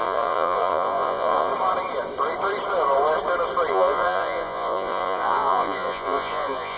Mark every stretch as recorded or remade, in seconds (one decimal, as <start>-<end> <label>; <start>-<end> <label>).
0.0-1.5 remade; 1.5-3.7 recorded; 3.7-6.8 remade